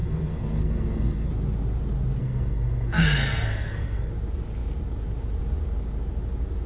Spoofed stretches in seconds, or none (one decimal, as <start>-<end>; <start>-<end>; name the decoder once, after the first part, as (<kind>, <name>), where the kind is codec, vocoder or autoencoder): 0.0-1.3 (codec, SNAC); 2.2-4.1